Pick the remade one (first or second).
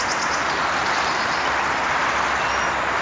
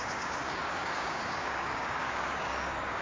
second